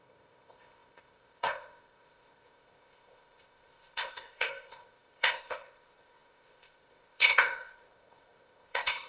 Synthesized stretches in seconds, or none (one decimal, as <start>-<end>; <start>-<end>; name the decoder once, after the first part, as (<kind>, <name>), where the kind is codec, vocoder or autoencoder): 0.0-9.1 (codec, ZipCodec)